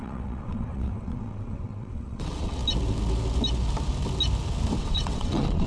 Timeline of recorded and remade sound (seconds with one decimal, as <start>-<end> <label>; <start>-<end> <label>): 0.0-2.6 remade; 2.6-4.8 recorded; 4.8-5.7 remade

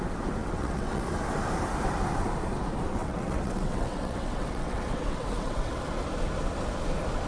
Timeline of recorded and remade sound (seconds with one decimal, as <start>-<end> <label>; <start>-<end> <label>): 0.0-0.4 recorded; 0.4-1.0 remade; 1.0-3.0 recorded; 3.0-5.8 remade; 5.8-7.3 recorded

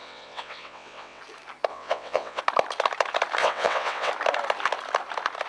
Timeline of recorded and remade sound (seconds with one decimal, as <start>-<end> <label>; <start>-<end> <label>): 0.0-1.2 remade; 1.2-1.7 recorded; 1.7-2.4 remade; 2.4-3.4 recorded; 3.4-4.1 remade; 4.1-5.5 recorded

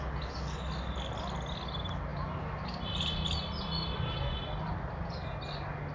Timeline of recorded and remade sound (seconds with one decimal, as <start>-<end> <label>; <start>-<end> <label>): 0.0-5.9 recorded

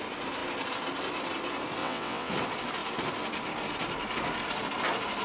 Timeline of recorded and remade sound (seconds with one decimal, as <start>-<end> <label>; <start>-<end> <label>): 0.0-1.8 recorded; 1.8-2.3 remade; 2.3-5.2 recorded

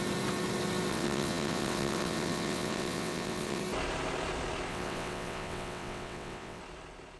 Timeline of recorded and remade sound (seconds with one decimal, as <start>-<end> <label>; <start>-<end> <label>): 0.0-0.9 recorded; 0.9-3.6 remade; 3.6-4.7 recorded; 4.7-6.6 remade; 6.6-7.2 recorded

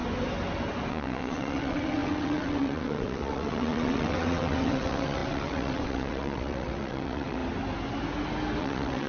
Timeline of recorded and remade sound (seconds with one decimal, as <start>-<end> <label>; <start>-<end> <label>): 0.0-0.9 recorded; 0.9-7.4 remade; 7.4-8.6 recorded; 8.6-9.1 remade

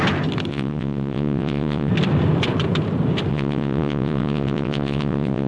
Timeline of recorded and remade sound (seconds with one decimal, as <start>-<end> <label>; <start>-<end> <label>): 0.0-0.5 recorded; 0.5-1.9 remade; 1.9-3.3 recorded; 3.3-5.5 remade